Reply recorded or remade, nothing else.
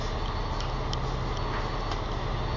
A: recorded